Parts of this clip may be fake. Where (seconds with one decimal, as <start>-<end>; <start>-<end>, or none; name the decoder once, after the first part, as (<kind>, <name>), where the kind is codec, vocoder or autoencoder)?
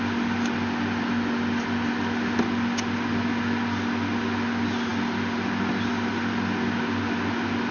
none